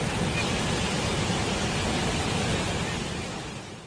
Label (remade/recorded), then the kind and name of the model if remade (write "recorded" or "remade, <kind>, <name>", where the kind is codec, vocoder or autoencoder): recorded